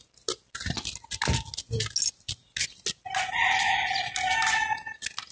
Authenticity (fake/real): real